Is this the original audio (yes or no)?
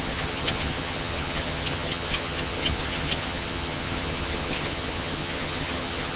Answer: no